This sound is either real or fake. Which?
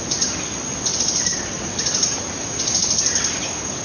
real